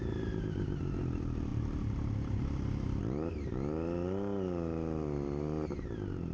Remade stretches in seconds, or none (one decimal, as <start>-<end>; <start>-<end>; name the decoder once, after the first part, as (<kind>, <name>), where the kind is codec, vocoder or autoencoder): none